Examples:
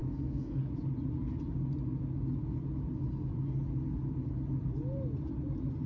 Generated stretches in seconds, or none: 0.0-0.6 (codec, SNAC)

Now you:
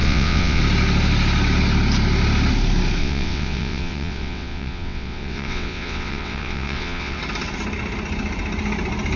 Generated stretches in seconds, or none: 0.0-0.6 (vocoder, WaveNeXt); 3.0-7.2

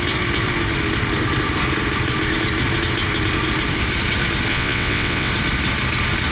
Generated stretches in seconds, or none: 4.5-5.3 (vocoder, WaveNeXt)

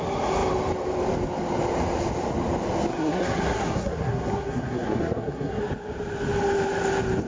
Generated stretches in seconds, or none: 2.9-5.6 (codec, SNAC)

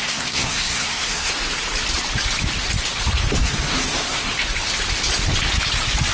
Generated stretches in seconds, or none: 0.0-1.3 (codec, SNAC); 3.4-4.3